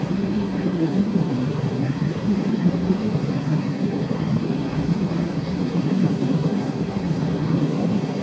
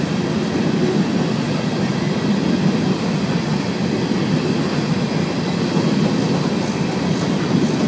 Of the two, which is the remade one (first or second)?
first